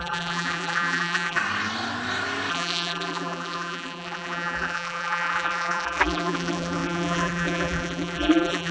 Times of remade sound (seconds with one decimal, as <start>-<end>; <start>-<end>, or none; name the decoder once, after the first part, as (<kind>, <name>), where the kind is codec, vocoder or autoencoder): 0.0-1.4 (vocoder, BigVGAN v2); 2.5-8.7